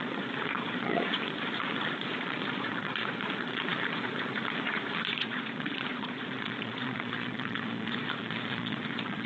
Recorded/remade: remade